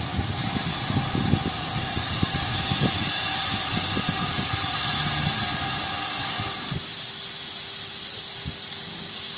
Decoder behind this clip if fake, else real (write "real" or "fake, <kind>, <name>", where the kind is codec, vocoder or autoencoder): real